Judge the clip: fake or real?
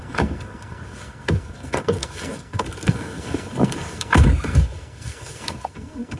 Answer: fake